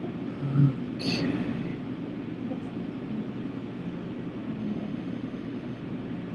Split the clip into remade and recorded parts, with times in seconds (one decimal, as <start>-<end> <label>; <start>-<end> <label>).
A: 0.0-4.6 recorded; 4.6-5.8 remade; 5.8-6.3 recorded